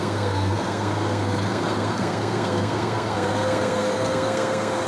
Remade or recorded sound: remade